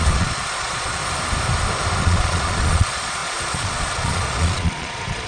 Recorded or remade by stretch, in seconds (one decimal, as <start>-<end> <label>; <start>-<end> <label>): 0.0-1.0 remade; 1.0-2.0 recorded; 2.0-5.3 remade